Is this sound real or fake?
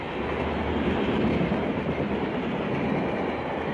real